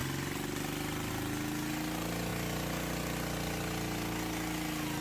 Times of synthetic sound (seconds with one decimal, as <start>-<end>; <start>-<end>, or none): none